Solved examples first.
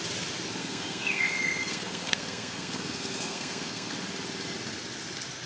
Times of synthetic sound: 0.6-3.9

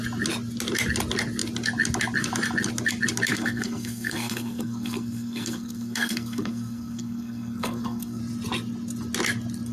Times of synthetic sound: 3.3-8.2

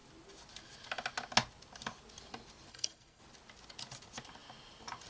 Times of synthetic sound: 2.7-3.2